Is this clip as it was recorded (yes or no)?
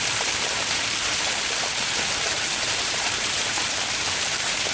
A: no